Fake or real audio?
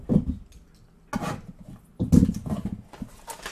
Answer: real